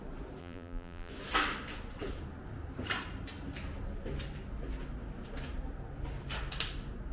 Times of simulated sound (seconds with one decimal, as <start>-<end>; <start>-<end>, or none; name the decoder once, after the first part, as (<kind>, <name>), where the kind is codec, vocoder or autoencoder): 0.4-1.1 (vocoder, BigVGAN v2)